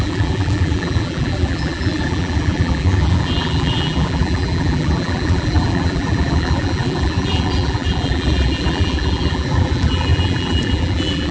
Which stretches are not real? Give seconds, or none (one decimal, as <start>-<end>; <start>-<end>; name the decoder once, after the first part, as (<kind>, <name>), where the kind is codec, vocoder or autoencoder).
0.0-11.3 (vocoder, BigVGAN v2)